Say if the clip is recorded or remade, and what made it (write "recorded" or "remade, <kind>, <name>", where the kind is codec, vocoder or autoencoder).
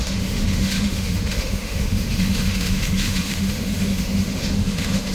remade, autoencoder, DAC-VAE